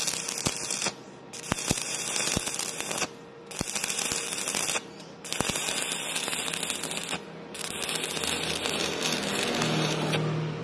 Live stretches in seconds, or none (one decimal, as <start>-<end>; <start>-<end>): 0.0-10.6